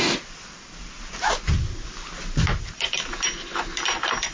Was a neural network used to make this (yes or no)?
no